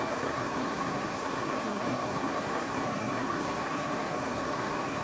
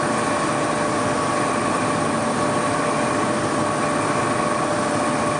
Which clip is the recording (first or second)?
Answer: second